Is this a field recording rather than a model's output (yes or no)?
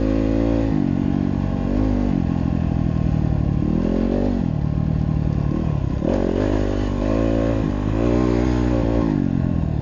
yes